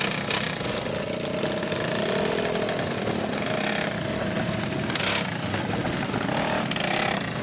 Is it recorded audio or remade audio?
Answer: recorded